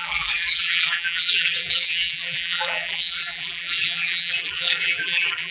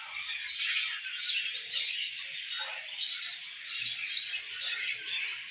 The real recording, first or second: second